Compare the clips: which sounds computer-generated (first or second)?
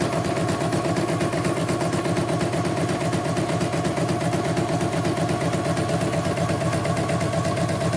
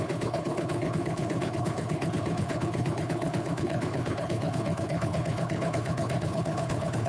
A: second